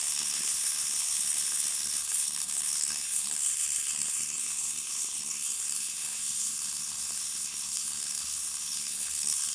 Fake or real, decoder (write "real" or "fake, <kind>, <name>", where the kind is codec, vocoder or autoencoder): fake, codec, SNAC